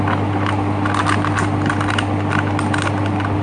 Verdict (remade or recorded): recorded